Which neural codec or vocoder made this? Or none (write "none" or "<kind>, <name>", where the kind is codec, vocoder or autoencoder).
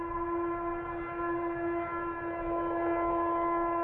none